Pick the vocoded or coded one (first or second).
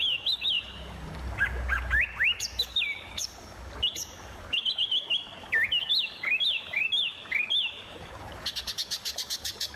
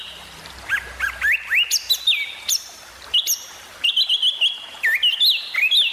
first